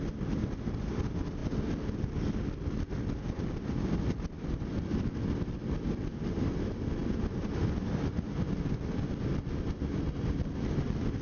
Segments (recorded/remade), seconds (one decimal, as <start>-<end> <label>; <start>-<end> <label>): 0.0-11.2 recorded